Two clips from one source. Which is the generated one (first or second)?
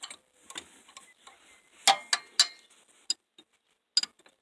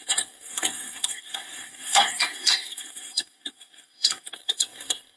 second